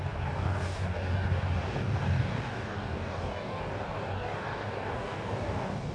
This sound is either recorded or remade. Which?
remade